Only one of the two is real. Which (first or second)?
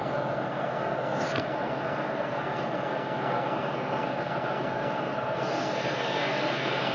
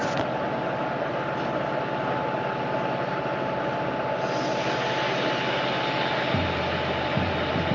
second